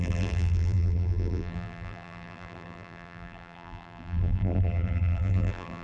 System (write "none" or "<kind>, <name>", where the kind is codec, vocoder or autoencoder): vocoder, BigVGAN v2